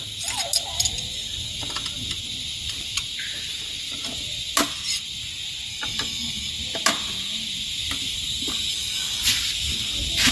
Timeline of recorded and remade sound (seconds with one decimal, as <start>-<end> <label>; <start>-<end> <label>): 0.0-5.7 recorded; 5.7-6.5 remade; 6.5-8.7 recorded; 8.7-9.2 remade; 9.2-10.3 recorded